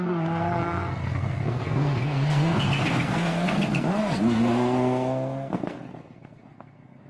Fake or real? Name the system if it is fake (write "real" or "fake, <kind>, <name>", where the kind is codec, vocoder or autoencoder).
fake, codec, SNAC